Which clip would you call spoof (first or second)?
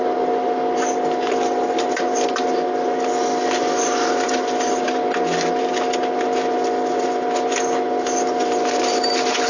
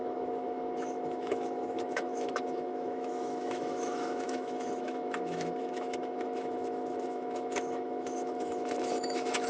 second